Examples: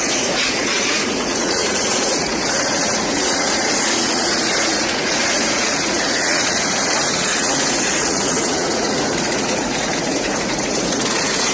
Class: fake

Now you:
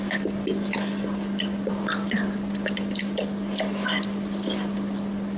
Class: real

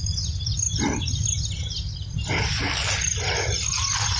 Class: real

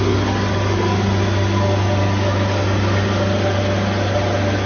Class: real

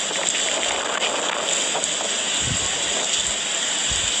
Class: real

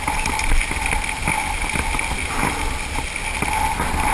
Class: real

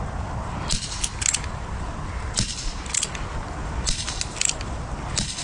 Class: real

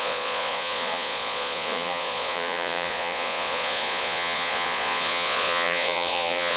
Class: fake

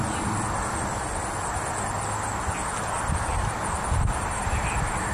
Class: real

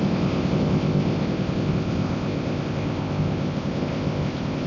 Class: fake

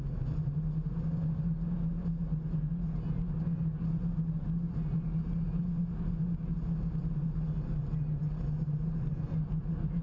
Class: real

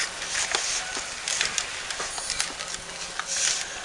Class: real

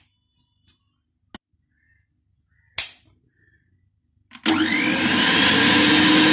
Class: real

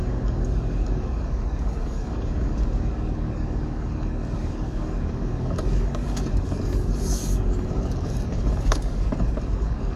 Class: fake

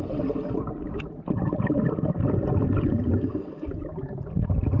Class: real